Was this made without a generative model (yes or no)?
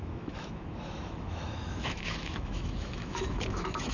no